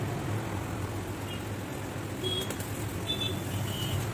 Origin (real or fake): real